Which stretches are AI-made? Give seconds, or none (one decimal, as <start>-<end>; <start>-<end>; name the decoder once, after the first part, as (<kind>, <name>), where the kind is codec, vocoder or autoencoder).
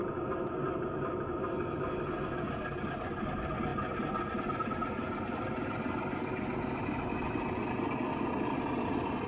none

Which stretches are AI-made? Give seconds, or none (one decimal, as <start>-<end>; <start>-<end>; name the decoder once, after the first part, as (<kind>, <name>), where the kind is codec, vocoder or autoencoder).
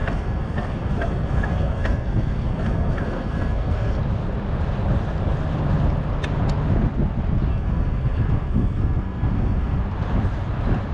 0.0-4.0 (codec, SNAC); 7.5-9.8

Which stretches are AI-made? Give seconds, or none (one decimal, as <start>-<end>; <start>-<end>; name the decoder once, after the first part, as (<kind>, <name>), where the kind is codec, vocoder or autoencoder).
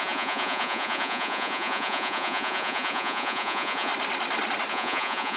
0.0-3.9 (vocoder, Vocos); 4.7-5.4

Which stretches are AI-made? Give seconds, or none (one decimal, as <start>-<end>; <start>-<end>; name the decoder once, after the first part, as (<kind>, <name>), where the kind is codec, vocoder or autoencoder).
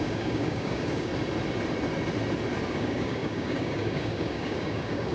0.0-1.1 (codec, DAC); 2.7-5.1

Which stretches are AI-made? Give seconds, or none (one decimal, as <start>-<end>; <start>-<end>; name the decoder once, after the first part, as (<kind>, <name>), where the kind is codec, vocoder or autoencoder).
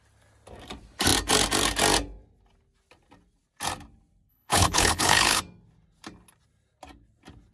4.3-5.4 (codec, HILCodec)